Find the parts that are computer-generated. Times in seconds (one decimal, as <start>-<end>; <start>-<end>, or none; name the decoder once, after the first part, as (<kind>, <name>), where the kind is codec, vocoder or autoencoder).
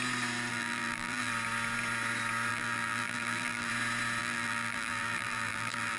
0.5-1.3 (vocoder, BigVGAN v2); 2.5-3.7; 4.2-6.0